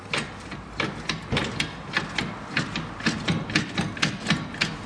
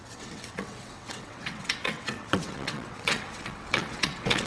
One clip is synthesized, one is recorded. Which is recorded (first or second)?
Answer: first